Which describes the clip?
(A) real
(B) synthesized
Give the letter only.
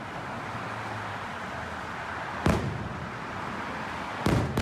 A